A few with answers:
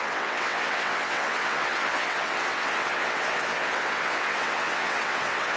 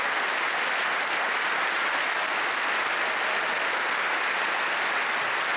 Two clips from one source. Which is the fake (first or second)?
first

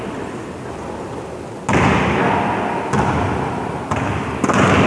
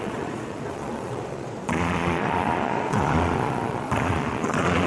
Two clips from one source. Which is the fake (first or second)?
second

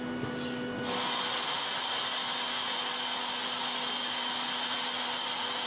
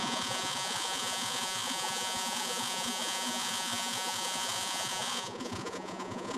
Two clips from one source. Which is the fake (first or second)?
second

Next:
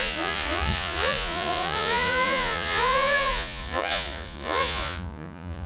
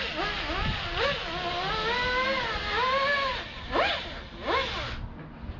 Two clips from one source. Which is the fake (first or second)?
first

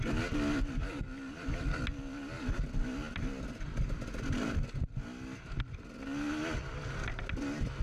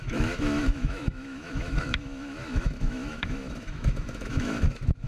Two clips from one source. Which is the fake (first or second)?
second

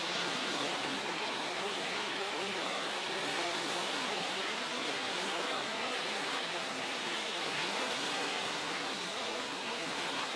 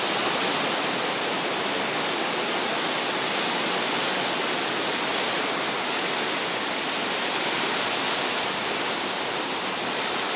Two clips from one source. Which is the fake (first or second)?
first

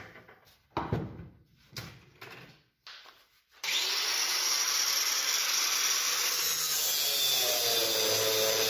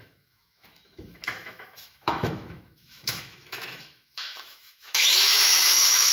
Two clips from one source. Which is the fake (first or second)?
second